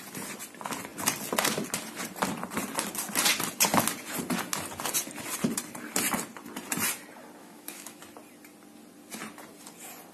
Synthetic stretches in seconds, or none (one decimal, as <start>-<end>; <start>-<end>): 7.4-8.0